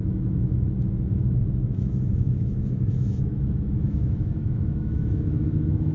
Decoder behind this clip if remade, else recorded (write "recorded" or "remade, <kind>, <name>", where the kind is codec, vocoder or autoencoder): remade, autoencoder, DAC-VAE